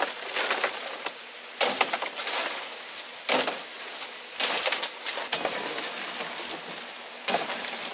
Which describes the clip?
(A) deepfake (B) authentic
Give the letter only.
B